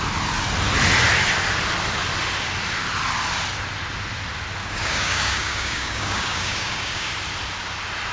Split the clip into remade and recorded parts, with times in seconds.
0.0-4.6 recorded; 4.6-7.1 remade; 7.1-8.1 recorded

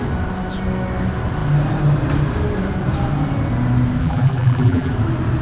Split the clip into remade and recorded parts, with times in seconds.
0.0-4.0 recorded; 4.0-4.9 remade; 4.9-5.4 recorded

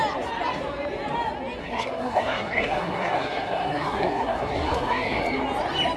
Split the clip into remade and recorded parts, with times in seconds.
0.0-1.6 recorded; 1.6-5.2 remade; 5.2-6.0 recorded

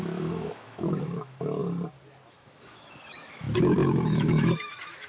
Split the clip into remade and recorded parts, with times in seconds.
0.0-1.6 remade; 1.6-2.3 recorded; 2.3-5.1 remade

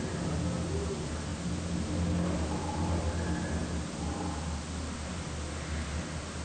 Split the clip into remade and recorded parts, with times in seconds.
0.0-6.4 recorded

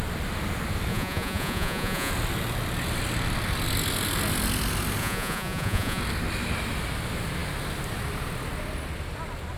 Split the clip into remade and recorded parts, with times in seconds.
0.0-0.9 recorded; 0.9-2.1 remade; 2.1-5.0 recorded; 5.0-6.0 remade; 6.0-9.6 recorded